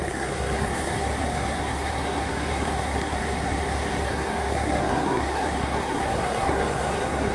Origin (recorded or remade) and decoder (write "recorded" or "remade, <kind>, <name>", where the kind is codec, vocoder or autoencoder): remade, codec, SNAC